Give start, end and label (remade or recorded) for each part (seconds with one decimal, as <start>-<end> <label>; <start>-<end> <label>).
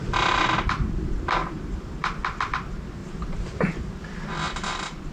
0.0-1.4 recorded; 1.4-2.2 remade; 2.2-3.0 recorded; 3.0-3.9 remade; 3.9-5.1 recorded